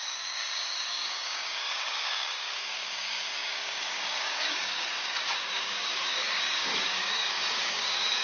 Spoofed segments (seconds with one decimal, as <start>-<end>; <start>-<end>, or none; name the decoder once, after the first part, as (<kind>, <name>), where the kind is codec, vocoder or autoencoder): 0.0-8.2 (codec, DAC)